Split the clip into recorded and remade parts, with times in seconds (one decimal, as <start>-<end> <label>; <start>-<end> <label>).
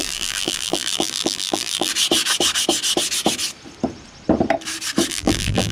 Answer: 0.0-1.9 remade; 1.9-5.1 recorded; 5.1-5.7 remade